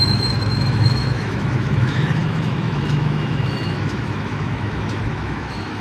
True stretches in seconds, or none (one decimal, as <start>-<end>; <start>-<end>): none